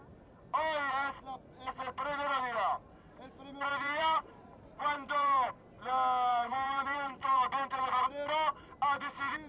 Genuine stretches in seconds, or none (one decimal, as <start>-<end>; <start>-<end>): 0.0-3.7; 5.5-6.3; 7.7-9.5